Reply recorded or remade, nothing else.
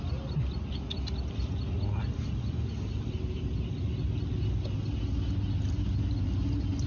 recorded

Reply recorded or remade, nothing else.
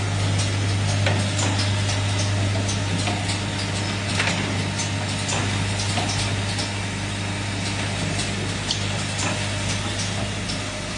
recorded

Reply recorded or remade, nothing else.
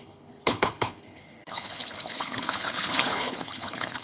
remade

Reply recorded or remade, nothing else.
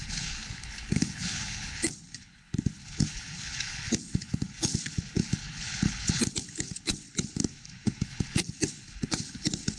remade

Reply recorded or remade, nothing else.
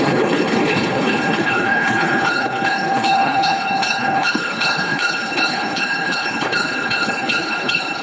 remade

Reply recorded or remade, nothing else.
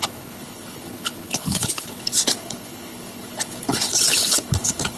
remade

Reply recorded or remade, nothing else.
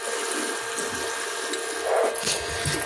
recorded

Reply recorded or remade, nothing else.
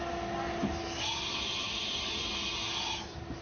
recorded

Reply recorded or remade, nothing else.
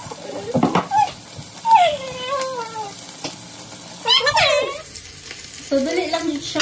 recorded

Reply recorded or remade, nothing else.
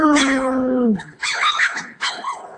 remade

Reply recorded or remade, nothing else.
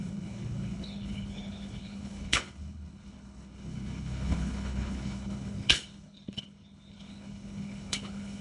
remade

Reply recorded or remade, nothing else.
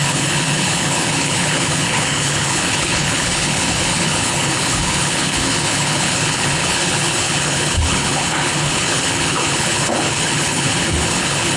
remade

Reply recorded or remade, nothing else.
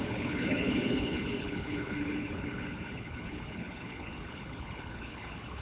remade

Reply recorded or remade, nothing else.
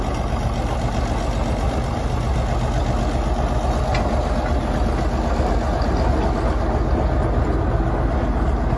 recorded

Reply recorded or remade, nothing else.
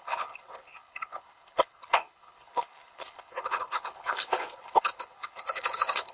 remade